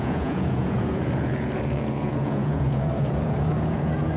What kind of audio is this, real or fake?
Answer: fake